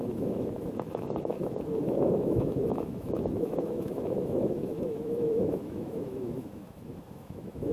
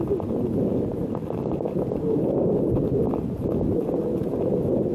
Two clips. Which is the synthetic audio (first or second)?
first